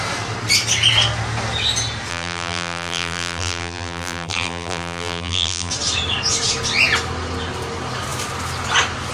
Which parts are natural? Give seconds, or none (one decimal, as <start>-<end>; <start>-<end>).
0.0-2.1; 5.7-9.1

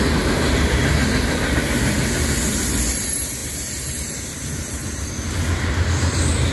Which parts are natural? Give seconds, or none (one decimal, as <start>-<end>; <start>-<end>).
0.0-3.4; 5.3-6.5

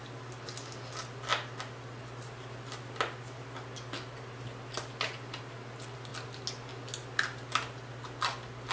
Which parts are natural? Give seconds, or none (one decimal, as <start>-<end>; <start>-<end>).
0.0-8.7

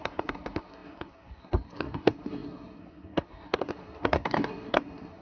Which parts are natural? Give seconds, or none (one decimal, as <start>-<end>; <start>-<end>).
none

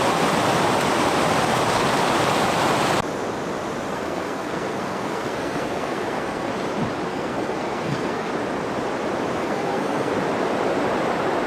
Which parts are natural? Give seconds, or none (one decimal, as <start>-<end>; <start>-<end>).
0.0-3.9; 6.5-7.1; 8.3-9.4; 10.1-11.5